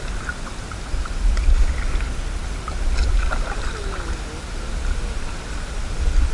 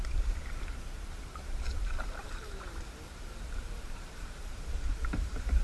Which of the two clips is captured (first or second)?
first